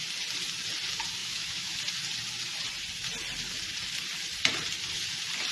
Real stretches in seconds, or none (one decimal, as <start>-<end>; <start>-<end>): 0.0-1.2; 1.8-5.5